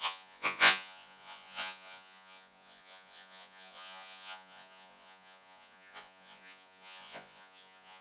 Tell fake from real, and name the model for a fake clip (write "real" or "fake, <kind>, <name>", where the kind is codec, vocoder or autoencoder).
fake, vocoder, Vocos